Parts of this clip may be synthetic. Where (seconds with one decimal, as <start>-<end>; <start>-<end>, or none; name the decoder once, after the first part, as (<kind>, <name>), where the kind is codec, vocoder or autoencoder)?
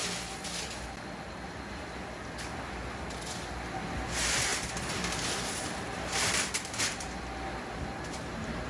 4.5-7.2 (vocoder, BigVGAN v2)